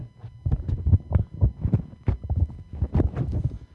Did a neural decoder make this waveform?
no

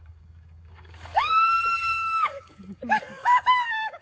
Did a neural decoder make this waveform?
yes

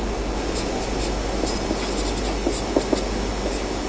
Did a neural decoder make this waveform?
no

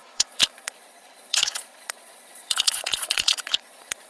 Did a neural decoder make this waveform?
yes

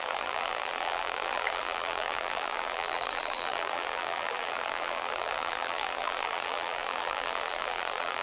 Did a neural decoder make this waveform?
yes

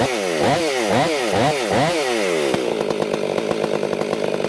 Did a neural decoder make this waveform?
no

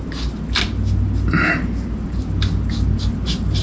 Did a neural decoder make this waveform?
no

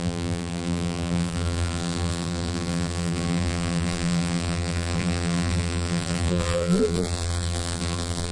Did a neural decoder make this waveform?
yes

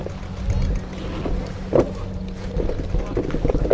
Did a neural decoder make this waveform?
no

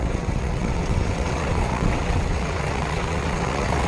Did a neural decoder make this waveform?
yes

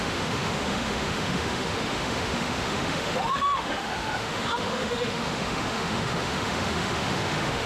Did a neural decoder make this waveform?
yes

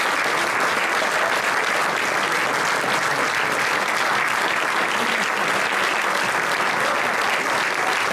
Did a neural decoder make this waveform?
no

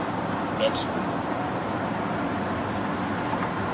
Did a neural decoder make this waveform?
no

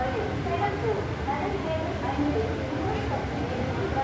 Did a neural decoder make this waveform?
no